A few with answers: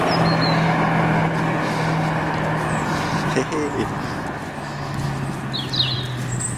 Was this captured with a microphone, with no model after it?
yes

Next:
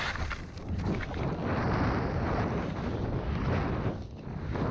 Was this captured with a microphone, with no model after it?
yes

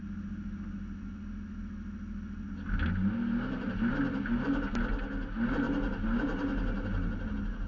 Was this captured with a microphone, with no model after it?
yes